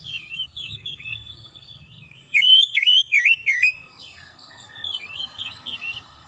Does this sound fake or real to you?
fake